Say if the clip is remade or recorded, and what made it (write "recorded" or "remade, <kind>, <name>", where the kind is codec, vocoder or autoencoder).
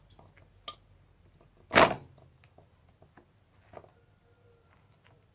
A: recorded